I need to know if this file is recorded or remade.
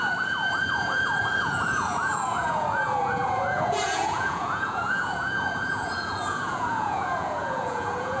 remade